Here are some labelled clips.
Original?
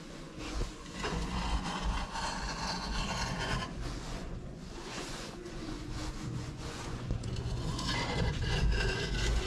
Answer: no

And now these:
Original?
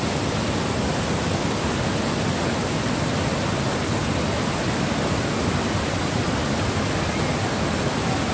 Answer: yes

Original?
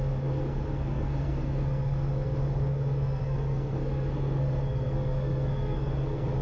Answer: no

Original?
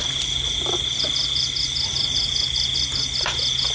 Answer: yes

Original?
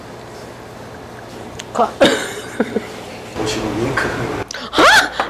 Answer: yes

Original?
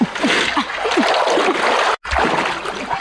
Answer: yes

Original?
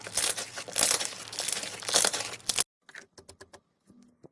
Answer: yes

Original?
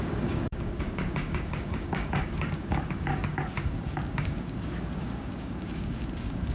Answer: no